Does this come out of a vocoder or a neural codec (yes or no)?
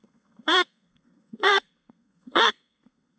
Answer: yes